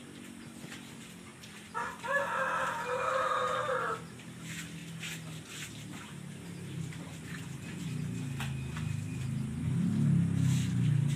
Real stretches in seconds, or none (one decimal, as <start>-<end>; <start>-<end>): 0.0-11.2